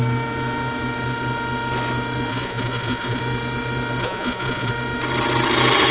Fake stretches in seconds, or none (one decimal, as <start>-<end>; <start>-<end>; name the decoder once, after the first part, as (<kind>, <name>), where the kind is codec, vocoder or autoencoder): 2.3-3.2 (vocoder, Vocos); 4.0-4.7